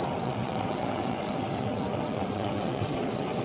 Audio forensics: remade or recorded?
remade